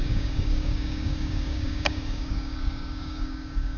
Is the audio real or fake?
fake